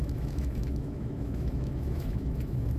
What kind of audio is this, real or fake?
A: fake